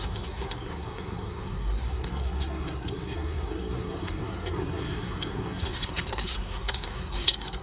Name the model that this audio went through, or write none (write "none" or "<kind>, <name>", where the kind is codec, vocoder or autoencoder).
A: codec, SNAC